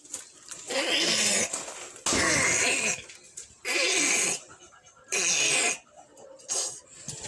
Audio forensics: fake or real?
real